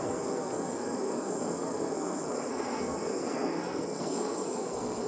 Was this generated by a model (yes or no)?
yes